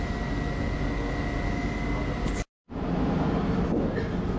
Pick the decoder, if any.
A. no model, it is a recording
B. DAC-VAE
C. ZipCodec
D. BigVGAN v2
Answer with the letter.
A